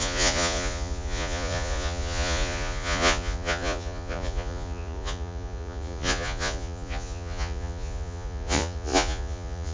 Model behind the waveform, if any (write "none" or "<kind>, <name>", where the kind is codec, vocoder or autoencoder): vocoder, Vocos